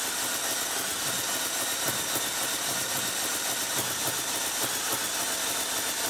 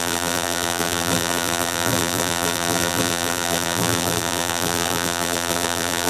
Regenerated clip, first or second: second